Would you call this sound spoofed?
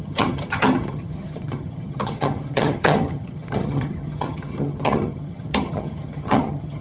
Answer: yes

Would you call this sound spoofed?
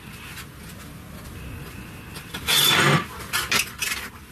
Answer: no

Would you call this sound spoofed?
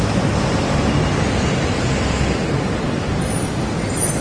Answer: no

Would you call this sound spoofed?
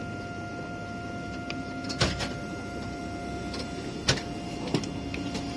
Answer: no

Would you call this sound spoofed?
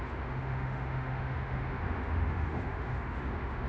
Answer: yes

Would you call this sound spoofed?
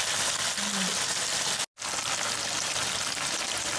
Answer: no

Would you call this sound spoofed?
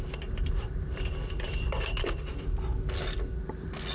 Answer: no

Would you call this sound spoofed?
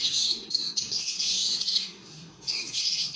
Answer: yes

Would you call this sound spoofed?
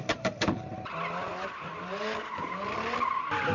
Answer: no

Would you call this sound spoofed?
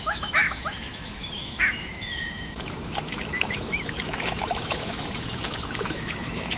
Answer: yes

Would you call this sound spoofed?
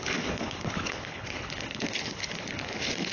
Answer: yes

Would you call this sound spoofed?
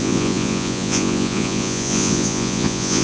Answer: yes